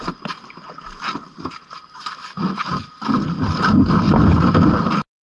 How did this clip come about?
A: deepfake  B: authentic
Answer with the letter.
B